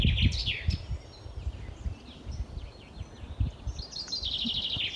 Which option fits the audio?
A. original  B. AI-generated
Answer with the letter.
A